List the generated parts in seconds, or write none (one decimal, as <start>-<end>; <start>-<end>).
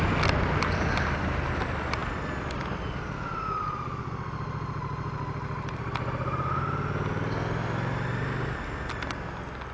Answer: none